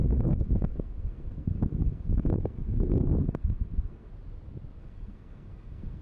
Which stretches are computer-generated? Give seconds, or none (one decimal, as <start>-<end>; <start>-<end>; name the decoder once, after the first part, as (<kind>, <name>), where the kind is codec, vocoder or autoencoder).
0.0-4.1 (codec, SNAC); 4.8-6.0